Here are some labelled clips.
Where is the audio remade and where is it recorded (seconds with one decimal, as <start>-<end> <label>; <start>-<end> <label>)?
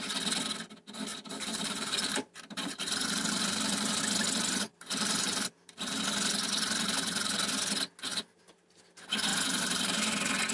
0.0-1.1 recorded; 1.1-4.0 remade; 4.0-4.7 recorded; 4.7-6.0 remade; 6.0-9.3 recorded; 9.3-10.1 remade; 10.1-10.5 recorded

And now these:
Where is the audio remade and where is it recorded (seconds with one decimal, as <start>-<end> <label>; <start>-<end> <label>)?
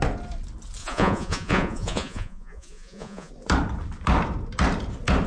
0.0-0.8 recorded; 0.8-3.3 remade; 3.3-5.3 recorded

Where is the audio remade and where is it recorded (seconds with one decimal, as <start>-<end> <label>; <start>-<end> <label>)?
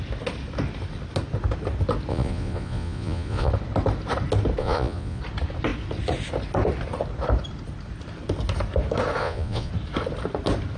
0.0-2.1 recorded; 2.1-3.5 remade; 3.5-4.6 recorded; 4.6-5.2 remade; 5.2-9.2 recorded; 9.2-9.7 remade; 9.7-10.8 recorded